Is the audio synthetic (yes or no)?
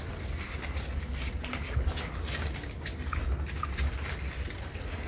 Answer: no